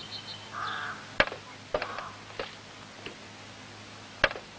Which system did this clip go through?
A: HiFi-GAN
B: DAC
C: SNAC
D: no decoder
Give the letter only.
D